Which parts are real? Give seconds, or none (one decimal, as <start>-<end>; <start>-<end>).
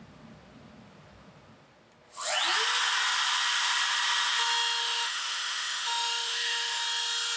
0.0-4.8; 6.8-7.4